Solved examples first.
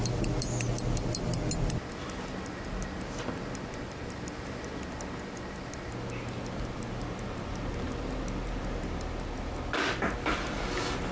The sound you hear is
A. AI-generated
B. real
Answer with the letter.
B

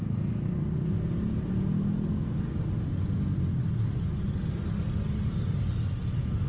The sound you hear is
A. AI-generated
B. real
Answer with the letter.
B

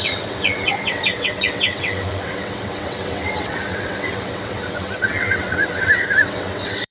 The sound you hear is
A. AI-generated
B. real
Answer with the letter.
A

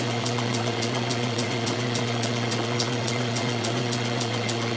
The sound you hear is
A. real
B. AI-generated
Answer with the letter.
B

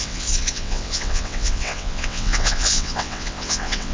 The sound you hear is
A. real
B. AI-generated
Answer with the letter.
B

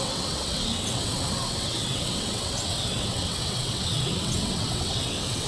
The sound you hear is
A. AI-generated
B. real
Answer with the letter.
A